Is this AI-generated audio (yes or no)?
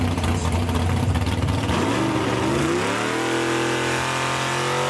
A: no